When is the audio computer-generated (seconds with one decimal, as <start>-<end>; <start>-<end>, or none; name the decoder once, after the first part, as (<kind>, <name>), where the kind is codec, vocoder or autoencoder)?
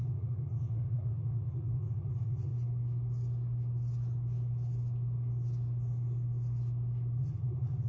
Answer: 0.0-2.5 (vocoder, Vocos); 7.2-7.9